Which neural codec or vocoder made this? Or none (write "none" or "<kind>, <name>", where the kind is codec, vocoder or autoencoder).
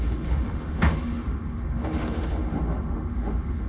autoencoder, DAC-VAE